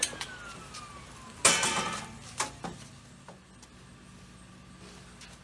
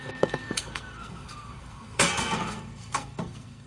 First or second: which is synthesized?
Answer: second